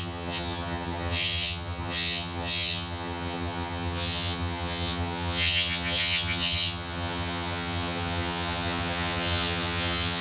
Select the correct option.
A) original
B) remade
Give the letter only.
B